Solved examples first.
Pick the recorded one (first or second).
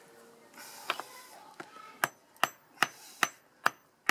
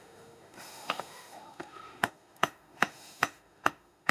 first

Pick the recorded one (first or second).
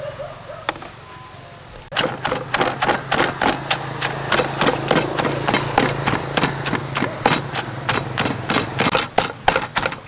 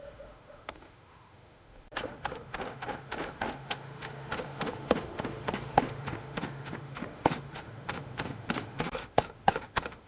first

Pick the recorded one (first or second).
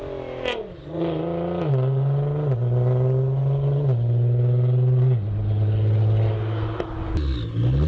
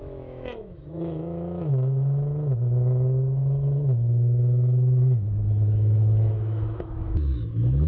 first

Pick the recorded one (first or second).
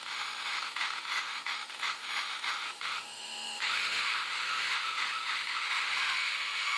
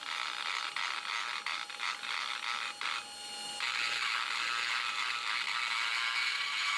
second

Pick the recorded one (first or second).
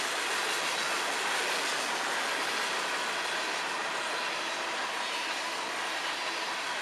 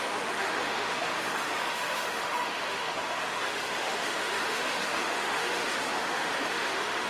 first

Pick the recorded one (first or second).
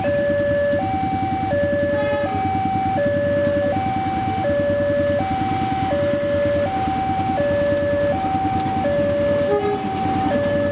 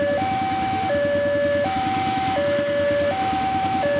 first